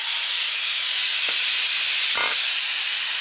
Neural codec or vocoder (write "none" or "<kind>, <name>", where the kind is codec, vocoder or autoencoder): vocoder, BigVGAN v2